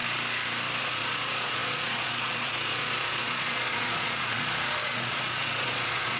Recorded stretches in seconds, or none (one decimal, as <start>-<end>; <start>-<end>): 0.0-0.8

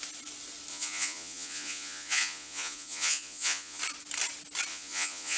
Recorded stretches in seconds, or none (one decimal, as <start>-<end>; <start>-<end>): 0.0-0.7; 3.8-4.7

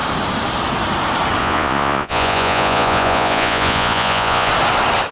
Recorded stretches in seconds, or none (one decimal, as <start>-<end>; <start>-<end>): 0.0-1.4; 4.5-5.1

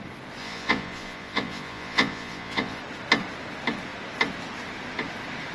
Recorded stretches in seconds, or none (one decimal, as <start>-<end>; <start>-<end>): 0.0-0.4; 2.8-5.5

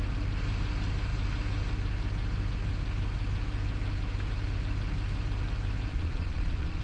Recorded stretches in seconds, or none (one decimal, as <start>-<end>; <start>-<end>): 0.0-5.9

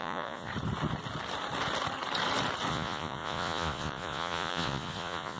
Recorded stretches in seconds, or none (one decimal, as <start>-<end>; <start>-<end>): 0.5-2.7

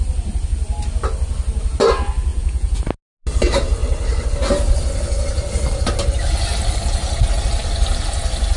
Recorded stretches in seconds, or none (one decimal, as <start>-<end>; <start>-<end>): 0.0-2.3; 2.8-8.6

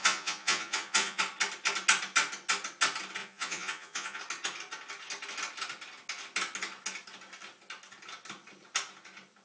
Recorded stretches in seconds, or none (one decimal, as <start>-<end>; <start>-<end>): 1.2-3.2; 4.2-9.4